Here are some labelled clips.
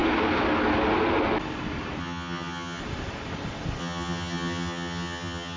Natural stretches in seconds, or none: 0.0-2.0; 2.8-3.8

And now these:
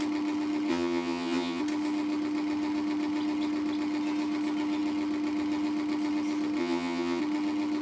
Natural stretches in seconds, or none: 0.0-0.7; 1.6-6.6; 7.2-7.8